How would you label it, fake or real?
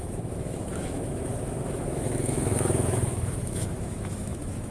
fake